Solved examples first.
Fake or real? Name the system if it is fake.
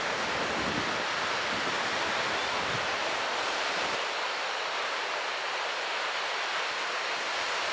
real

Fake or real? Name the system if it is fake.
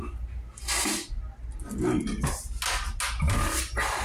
real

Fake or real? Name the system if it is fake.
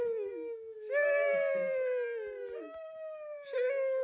real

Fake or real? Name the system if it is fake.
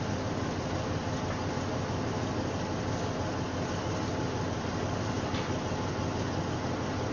real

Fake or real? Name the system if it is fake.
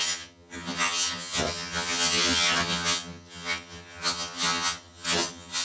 fake, vocoder, HiFi-GAN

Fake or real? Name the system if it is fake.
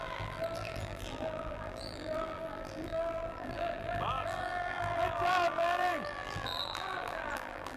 fake, vocoder, BigVGAN v2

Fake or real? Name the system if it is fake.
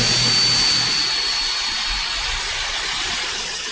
real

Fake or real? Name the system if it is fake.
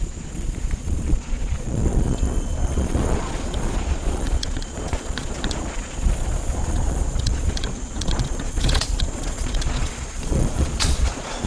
fake, vocoder, Vocos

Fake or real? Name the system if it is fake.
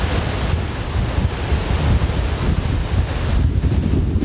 real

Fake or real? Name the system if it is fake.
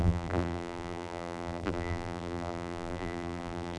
fake, vocoder, BigVGAN v2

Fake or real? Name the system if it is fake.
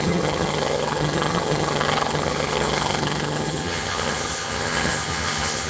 fake, vocoder, HiFi-GAN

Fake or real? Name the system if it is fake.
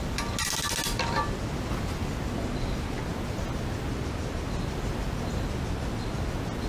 real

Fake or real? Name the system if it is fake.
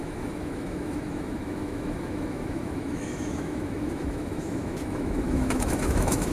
fake, autoencoder, DAC-VAE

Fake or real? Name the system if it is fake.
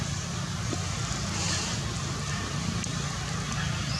real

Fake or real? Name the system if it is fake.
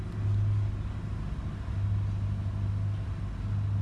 real